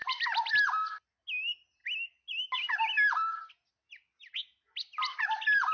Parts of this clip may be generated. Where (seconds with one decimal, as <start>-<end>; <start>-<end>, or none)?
none